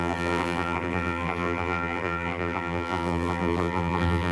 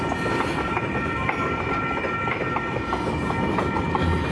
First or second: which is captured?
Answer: second